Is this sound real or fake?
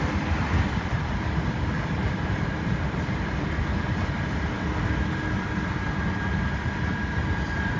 fake